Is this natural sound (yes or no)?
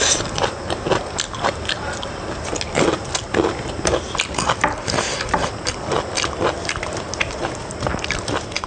yes